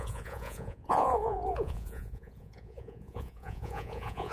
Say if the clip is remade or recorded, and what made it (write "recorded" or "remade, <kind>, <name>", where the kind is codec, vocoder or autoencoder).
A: remade, vocoder, Vocos